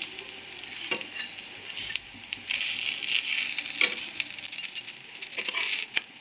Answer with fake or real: real